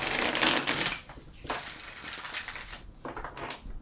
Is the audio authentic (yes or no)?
yes